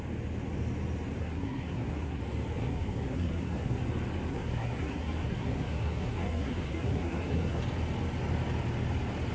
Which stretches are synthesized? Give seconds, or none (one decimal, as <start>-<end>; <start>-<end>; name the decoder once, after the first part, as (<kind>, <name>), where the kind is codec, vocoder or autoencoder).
1.2-2.2 (codec, SNAC); 2.6-3.8; 4.3-7.6